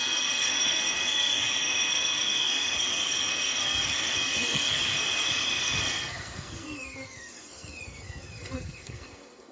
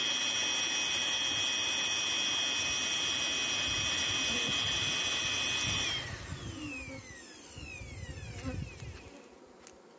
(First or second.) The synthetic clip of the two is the first